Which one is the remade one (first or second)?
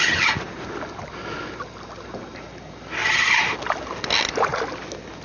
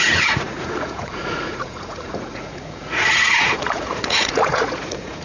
second